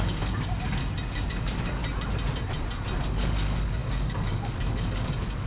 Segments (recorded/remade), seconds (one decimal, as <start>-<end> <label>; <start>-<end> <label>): 0.0-0.8 remade; 0.8-1.3 recorded; 1.3-1.8 remade; 1.8-3.0 recorded; 3.0-5.5 remade